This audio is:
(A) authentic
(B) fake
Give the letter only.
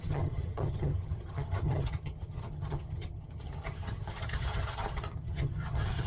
B